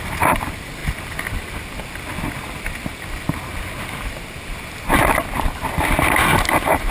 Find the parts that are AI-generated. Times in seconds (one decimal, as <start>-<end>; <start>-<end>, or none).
none